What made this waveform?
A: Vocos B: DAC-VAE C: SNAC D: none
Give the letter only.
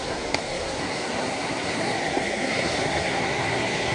C